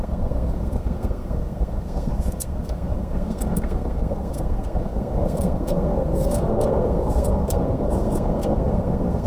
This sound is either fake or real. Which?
fake